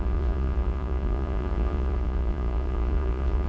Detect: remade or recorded remade